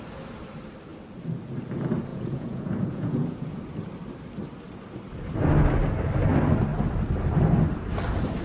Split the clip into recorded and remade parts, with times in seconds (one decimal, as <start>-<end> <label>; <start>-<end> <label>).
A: 0.0-2.1 recorded; 2.1-3.6 remade; 3.6-8.4 recorded